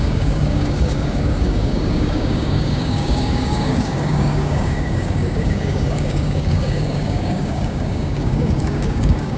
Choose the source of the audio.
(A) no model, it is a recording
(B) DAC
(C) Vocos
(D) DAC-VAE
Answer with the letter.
B